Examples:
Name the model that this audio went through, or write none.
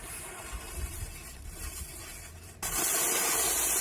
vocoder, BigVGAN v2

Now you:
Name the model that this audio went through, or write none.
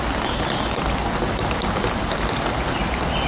none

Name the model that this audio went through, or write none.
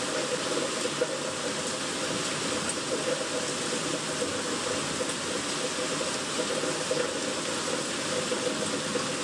none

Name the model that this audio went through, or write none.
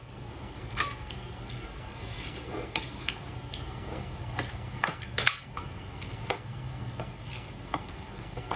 codec, SNAC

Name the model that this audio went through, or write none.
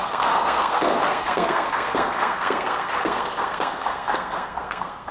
codec, SNAC